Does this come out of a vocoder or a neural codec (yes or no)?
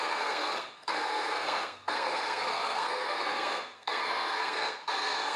yes